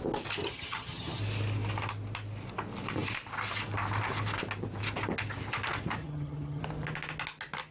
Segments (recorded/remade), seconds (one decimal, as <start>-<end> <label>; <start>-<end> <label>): 0.0-0.4 recorded; 0.4-1.2 remade; 1.2-6.0 recorded; 6.0-6.6 remade; 6.6-7.7 recorded